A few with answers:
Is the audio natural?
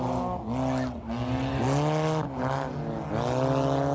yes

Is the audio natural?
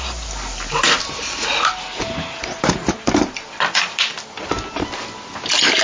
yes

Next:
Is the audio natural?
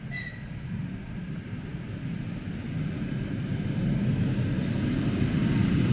yes